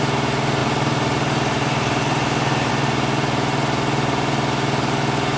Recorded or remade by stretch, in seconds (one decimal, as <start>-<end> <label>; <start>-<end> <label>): 0.0-0.6 recorded; 0.6-2.7 remade; 2.7-5.4 recorded